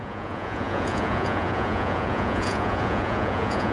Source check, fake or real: fake